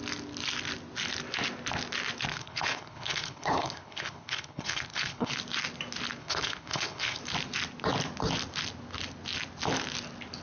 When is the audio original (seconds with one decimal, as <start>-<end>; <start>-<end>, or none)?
0.0-2.3; 5.3-6.2; 7.2-10.4